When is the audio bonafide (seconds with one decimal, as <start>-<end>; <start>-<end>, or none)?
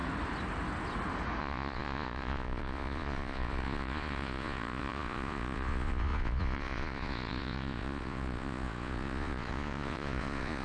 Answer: 0.0-1.4